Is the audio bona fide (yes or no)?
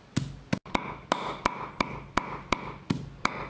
yes